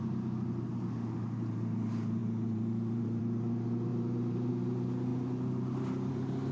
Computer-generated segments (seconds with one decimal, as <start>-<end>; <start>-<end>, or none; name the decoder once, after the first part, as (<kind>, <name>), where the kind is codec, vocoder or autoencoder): 2.2-3.2 (vocoder, BigVGAN v2); 3.9-4.5